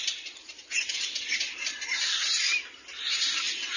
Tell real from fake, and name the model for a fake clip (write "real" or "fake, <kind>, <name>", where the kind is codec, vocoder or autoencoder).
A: real